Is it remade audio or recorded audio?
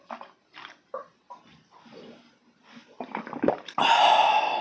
recorded